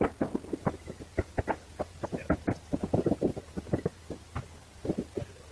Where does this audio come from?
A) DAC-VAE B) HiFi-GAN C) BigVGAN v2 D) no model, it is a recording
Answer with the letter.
D